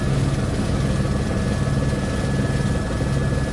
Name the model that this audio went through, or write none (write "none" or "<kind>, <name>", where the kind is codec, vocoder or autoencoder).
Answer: none